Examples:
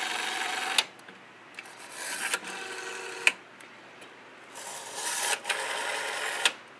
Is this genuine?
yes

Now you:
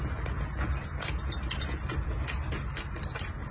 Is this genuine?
yes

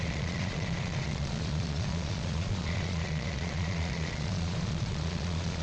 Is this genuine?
no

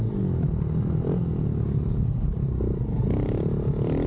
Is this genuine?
yes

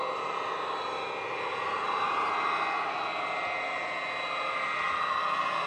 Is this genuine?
yes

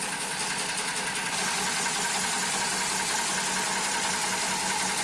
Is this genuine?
yes